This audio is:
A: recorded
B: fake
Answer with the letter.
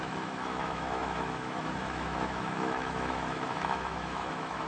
B